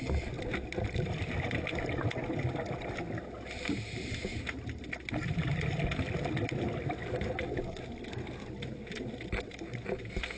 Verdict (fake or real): real